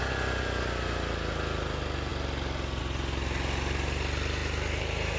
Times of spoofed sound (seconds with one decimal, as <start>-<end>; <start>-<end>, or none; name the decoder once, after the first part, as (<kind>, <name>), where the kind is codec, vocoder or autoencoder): none